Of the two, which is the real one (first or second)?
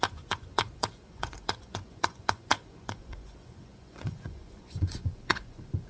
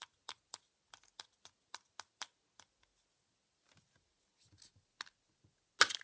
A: second